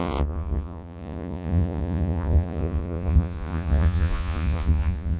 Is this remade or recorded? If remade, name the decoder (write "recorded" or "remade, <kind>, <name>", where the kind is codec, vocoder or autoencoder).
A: remade, vocoder, Vocos